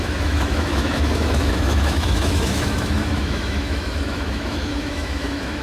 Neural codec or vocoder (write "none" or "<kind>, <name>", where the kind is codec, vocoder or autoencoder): autoencoder, DAC-VAE